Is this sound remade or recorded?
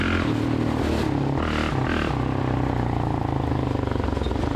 recorded